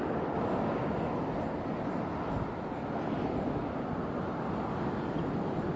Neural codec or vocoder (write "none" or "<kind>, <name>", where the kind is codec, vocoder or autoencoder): none